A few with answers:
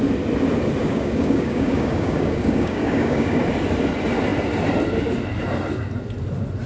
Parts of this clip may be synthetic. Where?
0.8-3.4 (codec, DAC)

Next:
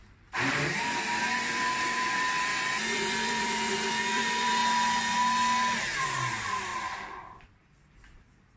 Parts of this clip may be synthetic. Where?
0.0-4.6 (vocoder, BigVGAN v2); 6.0-6.7; 7.8-8.6

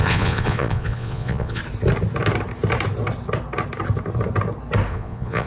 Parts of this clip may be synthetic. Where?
0.0-1.6 (vocoder, Vocos); 4.9-5.5

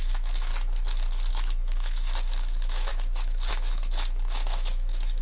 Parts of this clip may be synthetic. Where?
0.0-0.5 (autoencoder, DAC-VAE); 1.3-5.2

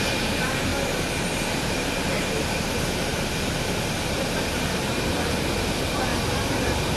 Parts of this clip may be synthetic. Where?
0.0-0.7 (vocoder, BigVGAN v2); 1.4-6.1